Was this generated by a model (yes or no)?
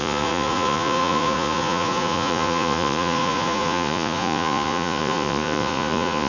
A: yes